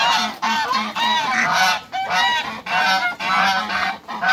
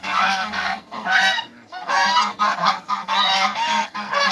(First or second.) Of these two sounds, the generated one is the second